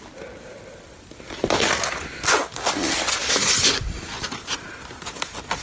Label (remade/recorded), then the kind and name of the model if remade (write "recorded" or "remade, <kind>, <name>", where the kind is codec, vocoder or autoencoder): recorded